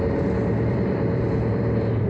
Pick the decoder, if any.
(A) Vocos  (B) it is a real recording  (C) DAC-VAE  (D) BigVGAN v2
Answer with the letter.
D